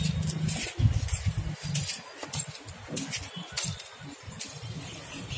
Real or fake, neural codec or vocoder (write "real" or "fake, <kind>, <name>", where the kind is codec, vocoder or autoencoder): real